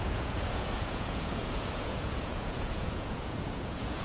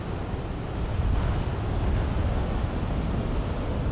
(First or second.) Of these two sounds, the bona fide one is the second